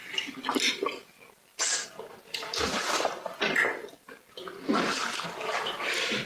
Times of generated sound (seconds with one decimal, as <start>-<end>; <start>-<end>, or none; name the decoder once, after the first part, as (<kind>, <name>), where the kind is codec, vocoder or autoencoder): 0.0-0.7 (vocoder, BigVGAN v2); 5.0-6.3